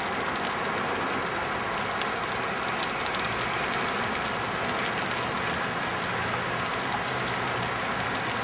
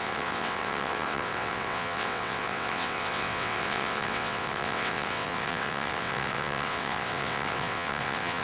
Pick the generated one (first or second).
second